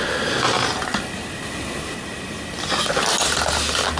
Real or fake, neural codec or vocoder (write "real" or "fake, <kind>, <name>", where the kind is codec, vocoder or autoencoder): real